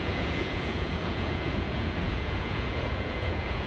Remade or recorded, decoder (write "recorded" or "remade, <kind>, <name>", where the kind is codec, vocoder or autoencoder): remade, vocoder, Vocos